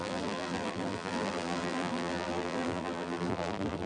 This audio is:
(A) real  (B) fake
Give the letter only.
B